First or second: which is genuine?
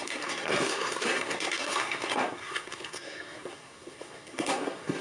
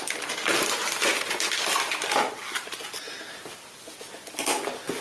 second